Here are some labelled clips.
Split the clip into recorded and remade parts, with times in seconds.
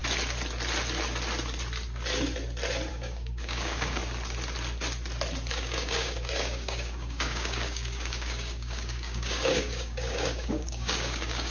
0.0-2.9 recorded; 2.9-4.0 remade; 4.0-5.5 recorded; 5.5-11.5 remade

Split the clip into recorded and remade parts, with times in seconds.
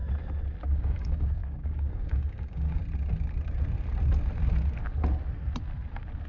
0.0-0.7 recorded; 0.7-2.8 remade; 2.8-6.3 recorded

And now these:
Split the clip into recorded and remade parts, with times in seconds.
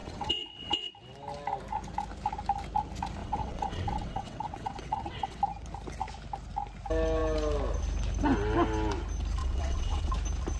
0.0-0.9 remade; 0.9-3.2 recorded; 3.2-5.4 remade; 5.4-9.4 recorded; 9.4-10.1 remade; 10.1-10.6 recorded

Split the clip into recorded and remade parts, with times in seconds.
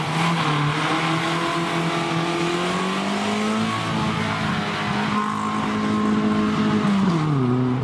0.0-7.8 recorded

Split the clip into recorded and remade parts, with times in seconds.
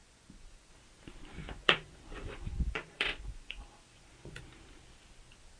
0.0-0.7 remade; 0.7-1.4 recorded; 1.4-4.4 remade; 4.4-5.6 recorded